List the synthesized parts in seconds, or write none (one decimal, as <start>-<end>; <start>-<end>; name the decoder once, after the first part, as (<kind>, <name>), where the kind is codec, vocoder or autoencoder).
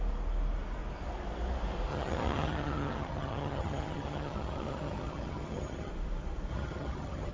1.9-5.9 (vocoder, HiFi-GAN); 6.5-7.3